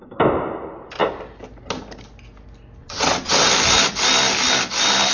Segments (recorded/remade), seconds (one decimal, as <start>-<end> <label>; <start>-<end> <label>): 0.0-2.8 recorded; 2.8-3.5 remade; 3.5-5.1 recorded